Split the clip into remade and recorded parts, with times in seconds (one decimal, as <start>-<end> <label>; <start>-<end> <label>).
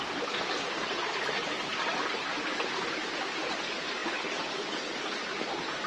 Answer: 0.0-5.9 recorded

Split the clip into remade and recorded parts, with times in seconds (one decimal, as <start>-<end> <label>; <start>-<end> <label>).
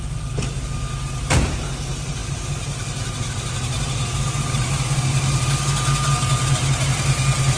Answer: 0.0-7.6 recorded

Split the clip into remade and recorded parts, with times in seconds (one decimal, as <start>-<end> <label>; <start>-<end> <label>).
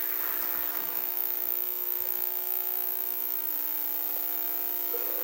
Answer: 0.0-0.7 recorded; 0.7-3.5 remade; 3.5-5.2 recorded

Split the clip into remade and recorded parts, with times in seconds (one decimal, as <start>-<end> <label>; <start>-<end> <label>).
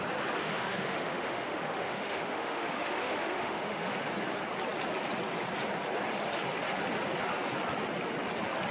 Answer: 0.0-0.4 recorded; 0.4-3.9 remade; 3.9-8.7 recorded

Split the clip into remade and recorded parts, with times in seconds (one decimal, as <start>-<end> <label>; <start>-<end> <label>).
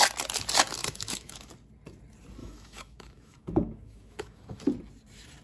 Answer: 0.0-0.8 recorded; 0.8-1.5 remade; 1.5-2.4 recorded; 2.4-4.6 remade; 4.6-5.4 recorded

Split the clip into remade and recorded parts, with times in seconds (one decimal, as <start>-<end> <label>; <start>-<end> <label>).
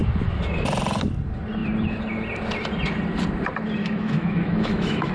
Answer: 0.0-3.8 recorded; 3.8-5.1 remade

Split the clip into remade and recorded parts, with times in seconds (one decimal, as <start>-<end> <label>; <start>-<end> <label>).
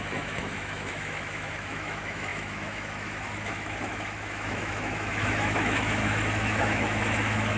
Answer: 0.0-7.6 remade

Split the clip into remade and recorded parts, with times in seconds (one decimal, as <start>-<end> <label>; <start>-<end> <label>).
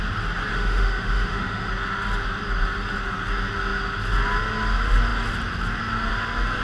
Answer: 0.0-0.5 recorded; 0.5-1.7 remade; 1.7-6.6 recorded